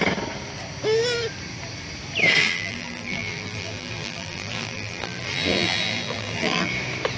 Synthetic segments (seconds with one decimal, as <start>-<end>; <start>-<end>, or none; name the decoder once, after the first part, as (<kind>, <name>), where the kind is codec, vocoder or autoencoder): 2.4-6.7 (vocoder, BigVGAN v2)